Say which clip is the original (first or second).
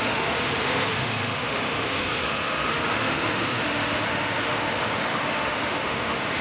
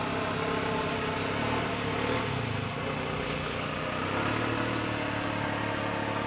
second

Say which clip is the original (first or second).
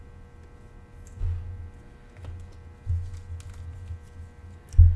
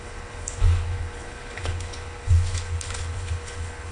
first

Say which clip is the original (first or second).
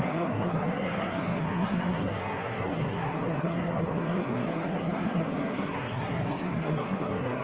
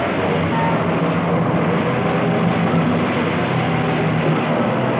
second